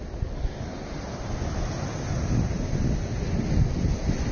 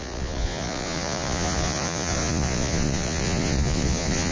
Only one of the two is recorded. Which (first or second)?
first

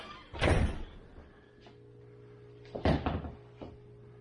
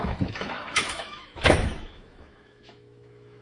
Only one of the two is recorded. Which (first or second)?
first